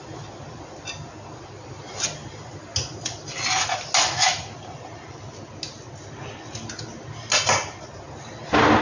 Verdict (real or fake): real